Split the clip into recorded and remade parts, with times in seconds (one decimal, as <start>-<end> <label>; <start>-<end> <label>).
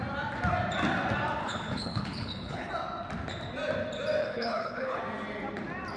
0.0-1.4 recorded; 1.4-2.7 remade; 2.7-4.2 recorded; 4.2-5.0 remade; 5.0-6.0 recorded